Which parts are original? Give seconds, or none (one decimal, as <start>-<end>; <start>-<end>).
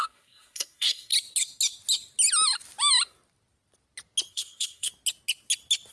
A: 1.1-4.3; 4.9-5.9